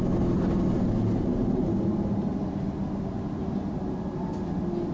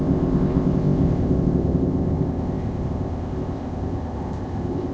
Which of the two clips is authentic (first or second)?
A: first